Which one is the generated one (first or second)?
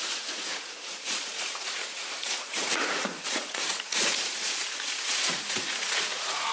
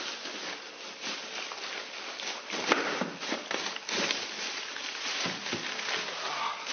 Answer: first